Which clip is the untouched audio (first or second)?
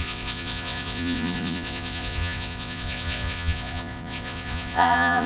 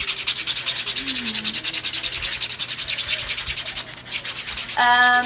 second